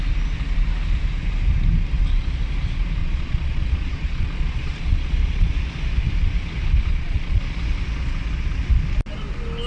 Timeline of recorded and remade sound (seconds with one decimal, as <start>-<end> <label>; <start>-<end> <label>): 0.0-3.0 recorded; 3.0-5.5 remade; 5.5-6.9 recorded; 6.9-7.4 remade; 7.4-9.7 recorded